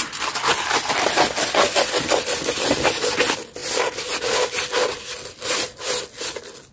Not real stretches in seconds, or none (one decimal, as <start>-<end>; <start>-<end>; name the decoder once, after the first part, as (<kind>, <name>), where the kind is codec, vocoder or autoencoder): none